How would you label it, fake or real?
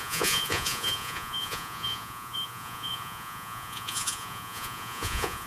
fake